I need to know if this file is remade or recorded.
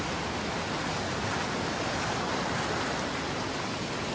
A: recorded